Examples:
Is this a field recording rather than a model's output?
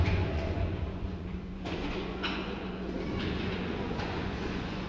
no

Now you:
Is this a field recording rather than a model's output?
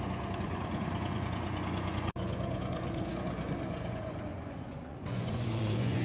no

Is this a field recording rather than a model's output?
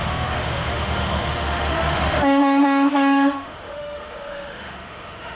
no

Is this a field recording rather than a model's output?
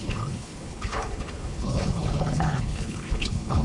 no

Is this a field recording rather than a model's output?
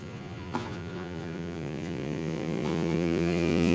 no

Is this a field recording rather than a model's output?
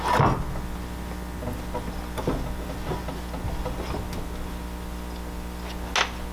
yes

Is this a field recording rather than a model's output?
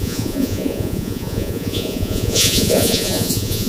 no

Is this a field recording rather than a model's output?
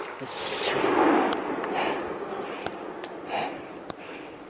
yes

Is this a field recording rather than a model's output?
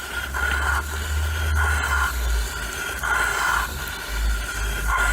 yes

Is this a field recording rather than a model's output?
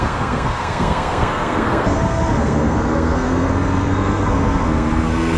no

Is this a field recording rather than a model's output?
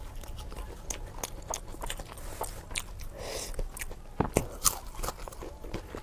yes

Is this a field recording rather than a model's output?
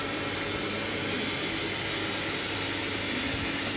yes